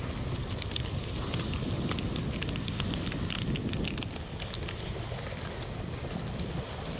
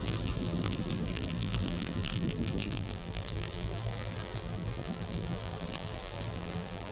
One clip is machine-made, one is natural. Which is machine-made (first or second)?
second